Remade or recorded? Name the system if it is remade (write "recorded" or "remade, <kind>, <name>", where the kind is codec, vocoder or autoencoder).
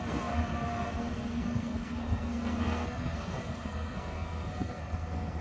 remade, codec, SNAC